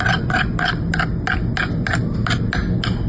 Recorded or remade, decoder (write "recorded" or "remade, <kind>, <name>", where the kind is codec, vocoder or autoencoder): recorded